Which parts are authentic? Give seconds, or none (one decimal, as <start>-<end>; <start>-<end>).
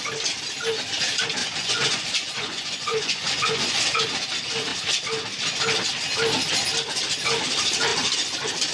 0.0-1.4; 3.8-8.7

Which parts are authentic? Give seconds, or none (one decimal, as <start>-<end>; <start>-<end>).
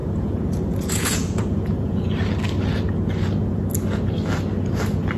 2.1-5.2